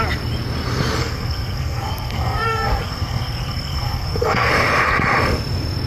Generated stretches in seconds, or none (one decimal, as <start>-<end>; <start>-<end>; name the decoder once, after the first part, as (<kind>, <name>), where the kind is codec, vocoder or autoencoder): 1.0-4.5 (codec, SNAC)